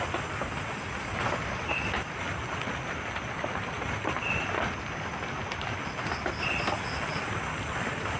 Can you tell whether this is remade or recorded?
recorded